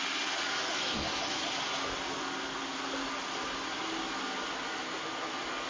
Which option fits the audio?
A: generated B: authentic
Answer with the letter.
B